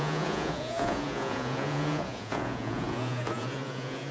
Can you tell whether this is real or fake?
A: fake